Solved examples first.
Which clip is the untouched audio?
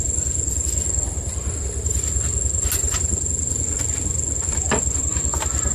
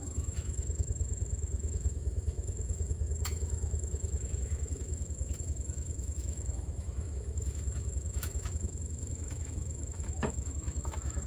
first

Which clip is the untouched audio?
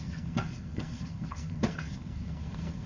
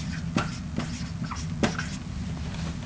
second